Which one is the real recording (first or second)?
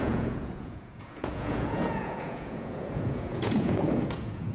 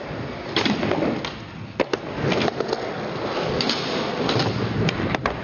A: second